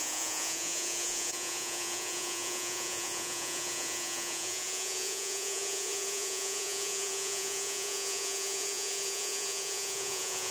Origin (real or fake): fake